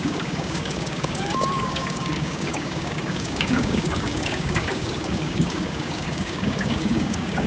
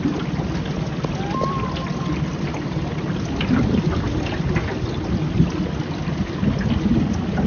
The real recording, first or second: second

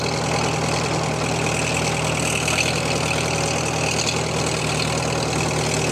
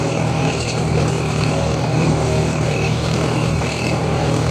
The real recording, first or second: first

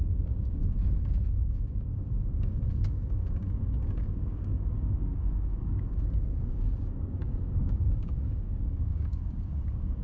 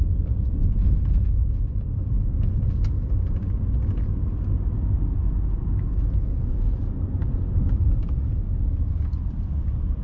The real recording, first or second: second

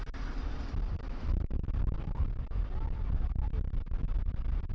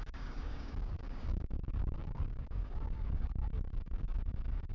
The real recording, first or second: first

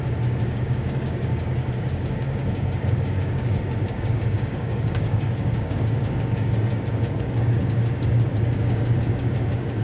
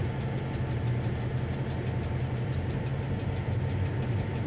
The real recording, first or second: second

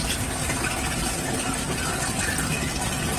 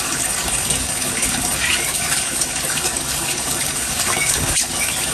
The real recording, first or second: first